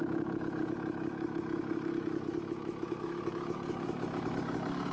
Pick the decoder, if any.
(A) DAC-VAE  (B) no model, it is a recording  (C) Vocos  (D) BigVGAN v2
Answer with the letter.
A